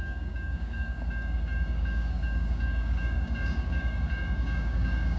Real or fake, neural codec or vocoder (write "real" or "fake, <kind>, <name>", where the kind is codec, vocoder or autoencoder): fake, codec, DAC